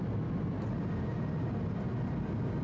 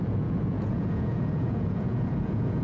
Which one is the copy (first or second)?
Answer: second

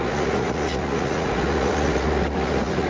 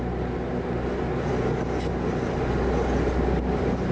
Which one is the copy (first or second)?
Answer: first